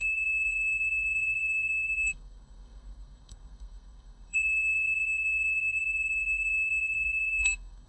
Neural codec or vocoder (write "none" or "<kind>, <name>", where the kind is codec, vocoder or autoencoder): codec, SNAC